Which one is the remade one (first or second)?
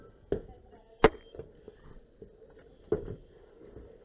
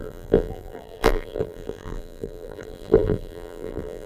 second